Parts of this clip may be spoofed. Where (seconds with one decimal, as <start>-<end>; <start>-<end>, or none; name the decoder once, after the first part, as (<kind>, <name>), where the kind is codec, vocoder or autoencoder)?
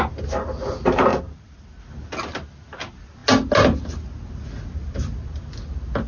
none